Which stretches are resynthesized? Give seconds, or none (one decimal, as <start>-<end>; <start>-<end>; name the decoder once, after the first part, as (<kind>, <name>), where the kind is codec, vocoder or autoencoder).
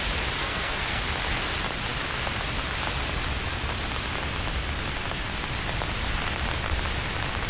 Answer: 0.4-1.0 (codec, SNAC)